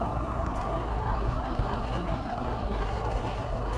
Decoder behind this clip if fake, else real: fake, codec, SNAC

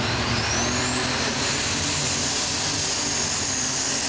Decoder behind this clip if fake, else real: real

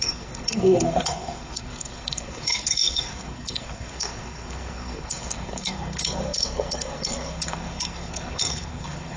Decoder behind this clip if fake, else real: fake, codec, SNAC